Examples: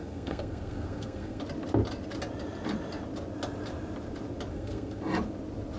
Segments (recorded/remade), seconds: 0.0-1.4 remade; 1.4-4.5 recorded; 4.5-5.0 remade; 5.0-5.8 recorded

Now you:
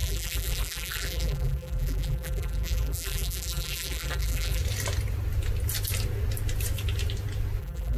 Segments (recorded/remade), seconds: 0.0-4.6 remade; 4.6-7.6 recorded; 7.6-8.0 remade

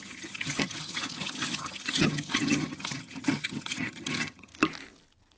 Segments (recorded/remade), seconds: 0.0-4.5 remade; 4.5-5.4 recorded

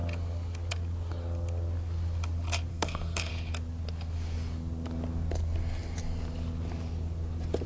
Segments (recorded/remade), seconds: 0.0-2.7 recorded; 2.7-3.3 remade; 3.3-7.7 recorded

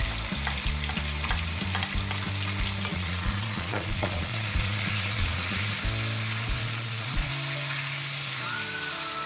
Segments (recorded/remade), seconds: 0.0-2.9 recorded; 2.9-5.6 remade; 5.6-6.6 recorded; 6.6-7.3 remade; 7.3-9.3 recorded

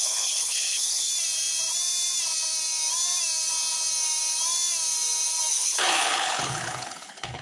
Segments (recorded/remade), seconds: 0.0-1.1 remade; 1.1-5.5 recorded; 5.5-7.4 remade